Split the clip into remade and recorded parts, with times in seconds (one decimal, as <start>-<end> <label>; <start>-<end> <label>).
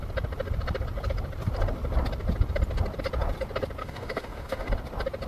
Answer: 0.0-3.8 recorded; 3.8-4.7 remade; 4.7-5.3 recorded